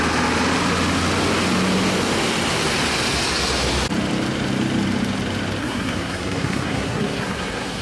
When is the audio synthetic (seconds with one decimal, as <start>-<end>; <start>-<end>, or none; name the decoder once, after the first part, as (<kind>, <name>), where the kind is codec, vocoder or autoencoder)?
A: 5.6-7.8 (codec, SNAC)